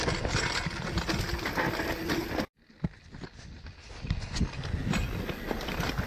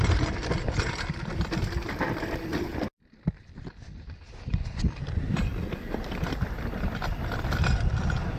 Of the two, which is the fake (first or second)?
second